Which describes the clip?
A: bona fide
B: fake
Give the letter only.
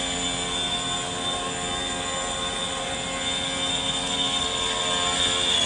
A